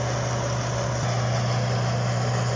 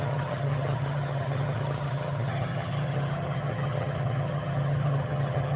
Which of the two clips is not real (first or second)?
second